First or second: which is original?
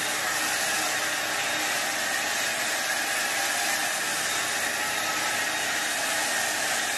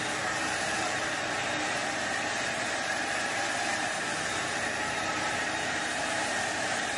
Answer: first